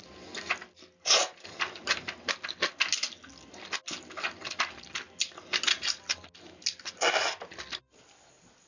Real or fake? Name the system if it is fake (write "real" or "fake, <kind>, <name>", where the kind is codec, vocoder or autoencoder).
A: real